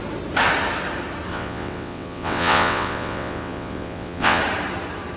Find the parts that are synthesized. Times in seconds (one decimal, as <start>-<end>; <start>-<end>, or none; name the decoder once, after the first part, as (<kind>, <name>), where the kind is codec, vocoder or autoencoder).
1.3-4.4 (vocoder, WaveNeXt)